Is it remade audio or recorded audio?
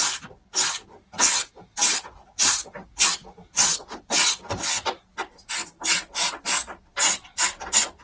remade